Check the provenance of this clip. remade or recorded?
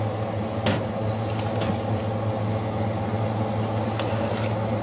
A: recorded